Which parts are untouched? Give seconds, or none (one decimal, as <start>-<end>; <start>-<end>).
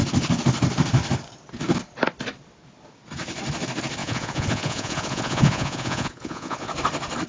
0.0-4.0; 6.7-7.3